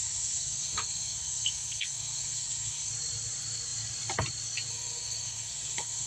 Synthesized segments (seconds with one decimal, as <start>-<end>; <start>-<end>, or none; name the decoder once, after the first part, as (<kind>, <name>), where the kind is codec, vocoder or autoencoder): 0.0-2.9 (codec, SNAC); 4.7-6.1